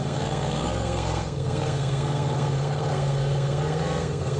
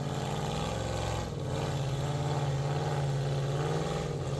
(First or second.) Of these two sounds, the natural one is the second